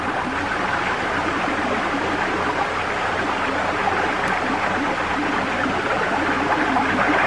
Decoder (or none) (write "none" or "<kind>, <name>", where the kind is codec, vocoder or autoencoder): none